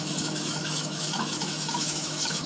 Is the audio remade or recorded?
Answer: remade